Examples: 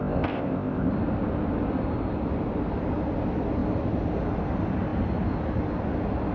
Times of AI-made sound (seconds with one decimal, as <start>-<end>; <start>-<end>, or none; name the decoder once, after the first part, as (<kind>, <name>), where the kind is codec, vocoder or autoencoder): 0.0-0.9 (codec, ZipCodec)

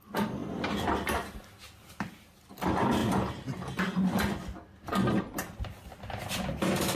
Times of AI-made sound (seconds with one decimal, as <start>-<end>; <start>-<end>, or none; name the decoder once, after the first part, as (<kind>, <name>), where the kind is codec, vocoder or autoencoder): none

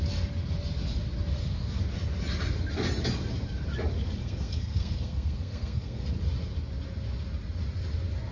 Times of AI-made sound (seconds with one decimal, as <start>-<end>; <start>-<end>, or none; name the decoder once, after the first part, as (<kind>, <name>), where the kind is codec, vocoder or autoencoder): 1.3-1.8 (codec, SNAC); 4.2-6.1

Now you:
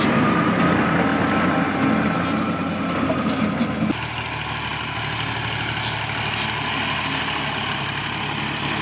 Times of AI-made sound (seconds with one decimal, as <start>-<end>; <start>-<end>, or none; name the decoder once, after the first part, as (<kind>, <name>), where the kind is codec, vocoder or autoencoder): none